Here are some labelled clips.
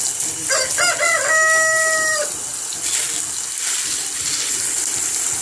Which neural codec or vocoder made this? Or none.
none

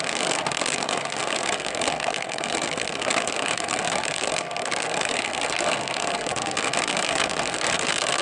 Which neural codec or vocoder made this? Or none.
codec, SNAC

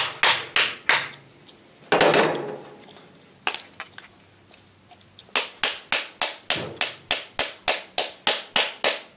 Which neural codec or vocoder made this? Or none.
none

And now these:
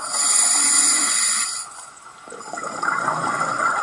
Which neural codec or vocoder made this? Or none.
vocoder, Vocos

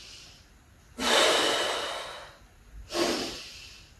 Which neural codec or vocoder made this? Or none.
none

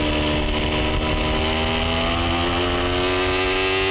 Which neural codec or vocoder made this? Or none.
none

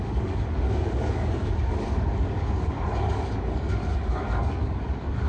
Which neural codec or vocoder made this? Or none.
codec, DAC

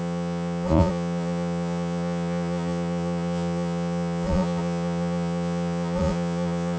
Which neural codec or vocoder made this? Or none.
vocoder, Vocos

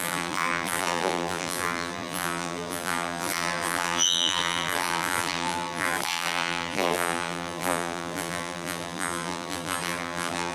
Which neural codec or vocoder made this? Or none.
vocoder, BigVGAN v2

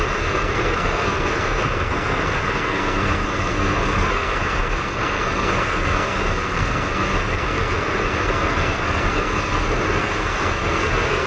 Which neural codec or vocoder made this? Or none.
codec, SNAC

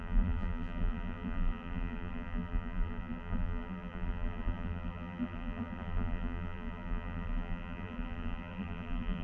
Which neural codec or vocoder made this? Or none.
vocoder, BigVGAN v2